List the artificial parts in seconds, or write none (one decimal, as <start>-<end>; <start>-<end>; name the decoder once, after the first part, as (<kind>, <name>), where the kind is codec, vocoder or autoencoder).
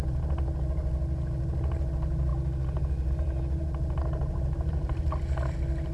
none